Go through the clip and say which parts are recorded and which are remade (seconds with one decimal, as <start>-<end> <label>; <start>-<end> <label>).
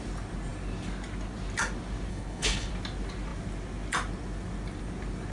0.0-2.1 recorded; 2.1-2.7 remade; 2.7-5.3 recorded